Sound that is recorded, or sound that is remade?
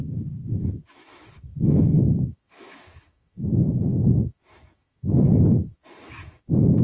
remade